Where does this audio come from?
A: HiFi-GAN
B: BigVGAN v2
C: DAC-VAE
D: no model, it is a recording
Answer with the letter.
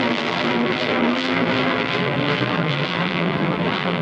B